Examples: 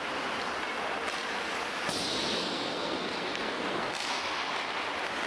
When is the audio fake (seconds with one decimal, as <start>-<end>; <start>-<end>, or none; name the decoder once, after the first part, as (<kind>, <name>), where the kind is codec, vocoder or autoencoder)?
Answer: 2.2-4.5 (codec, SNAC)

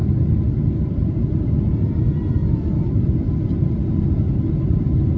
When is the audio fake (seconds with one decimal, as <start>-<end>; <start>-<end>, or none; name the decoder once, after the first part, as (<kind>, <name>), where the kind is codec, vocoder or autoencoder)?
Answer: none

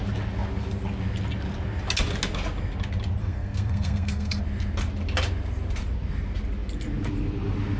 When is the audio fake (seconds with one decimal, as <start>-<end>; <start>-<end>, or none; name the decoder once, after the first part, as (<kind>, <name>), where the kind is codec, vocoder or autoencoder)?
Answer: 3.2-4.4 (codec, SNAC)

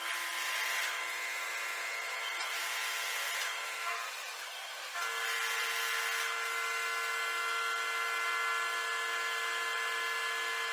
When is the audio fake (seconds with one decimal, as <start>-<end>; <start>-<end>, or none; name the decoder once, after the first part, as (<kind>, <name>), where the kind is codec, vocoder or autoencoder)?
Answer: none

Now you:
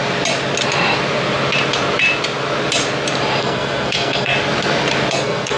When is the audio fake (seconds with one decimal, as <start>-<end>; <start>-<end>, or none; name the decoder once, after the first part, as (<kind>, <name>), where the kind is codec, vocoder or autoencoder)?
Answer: 3.4-4.3 (codec, SNAC); 5.1-5.6

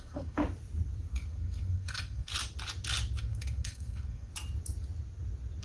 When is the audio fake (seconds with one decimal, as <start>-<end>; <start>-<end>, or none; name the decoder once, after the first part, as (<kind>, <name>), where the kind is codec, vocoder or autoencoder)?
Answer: 0.0-0.4 (codec, SNAC); 1.1-2.3; 3.2-4.3

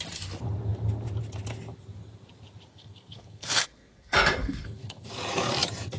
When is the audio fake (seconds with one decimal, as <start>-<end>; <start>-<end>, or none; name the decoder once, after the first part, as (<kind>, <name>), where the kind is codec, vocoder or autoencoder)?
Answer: 2.7-5.1 (codec, SNAC)